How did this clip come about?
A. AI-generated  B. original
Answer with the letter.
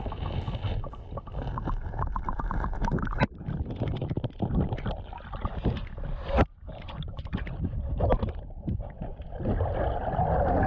B